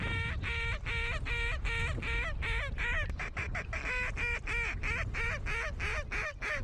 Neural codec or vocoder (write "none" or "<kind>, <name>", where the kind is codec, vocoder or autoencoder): none